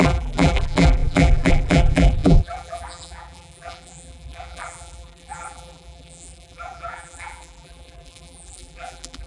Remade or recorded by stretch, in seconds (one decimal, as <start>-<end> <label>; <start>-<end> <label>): 0.0-9.3 remade